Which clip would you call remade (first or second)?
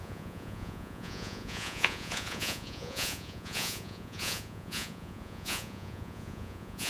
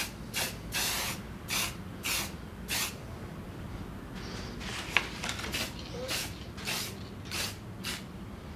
first